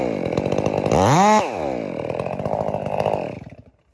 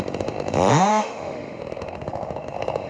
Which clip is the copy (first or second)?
second